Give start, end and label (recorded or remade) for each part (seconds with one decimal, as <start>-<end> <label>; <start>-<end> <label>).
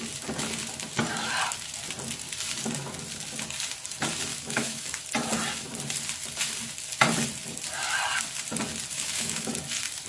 0.0-4.3 recorded; 4.3-5.0 remade; 5.0-8.9 recorded; 8.9-9.5 remade; 9.5-10.1 recorded